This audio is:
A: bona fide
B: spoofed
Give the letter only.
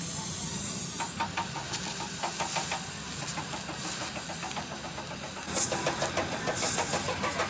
A